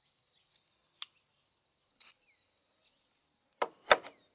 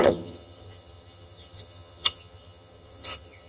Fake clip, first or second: second